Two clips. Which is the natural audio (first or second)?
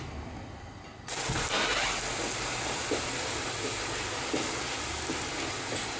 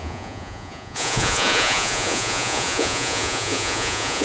first